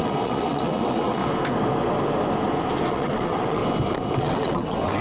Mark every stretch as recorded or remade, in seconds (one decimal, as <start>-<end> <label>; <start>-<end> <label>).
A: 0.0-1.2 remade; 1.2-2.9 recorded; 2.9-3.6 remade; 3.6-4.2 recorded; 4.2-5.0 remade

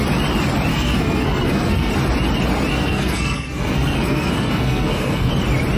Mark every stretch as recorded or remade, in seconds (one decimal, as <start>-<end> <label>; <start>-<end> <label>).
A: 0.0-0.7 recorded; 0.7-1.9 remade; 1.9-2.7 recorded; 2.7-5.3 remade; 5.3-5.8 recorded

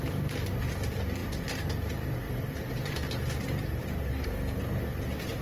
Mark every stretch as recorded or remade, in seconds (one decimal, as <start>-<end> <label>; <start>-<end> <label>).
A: 0.0-4.1 recorded; 4.1-4.6 remade; 4.6-5.4 recorded